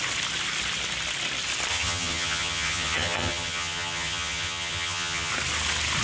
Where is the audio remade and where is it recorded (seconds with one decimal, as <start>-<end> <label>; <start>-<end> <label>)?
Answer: 0.0-1.7 recorded; 1.7-5.3 remade; 5.3-6.0 recorded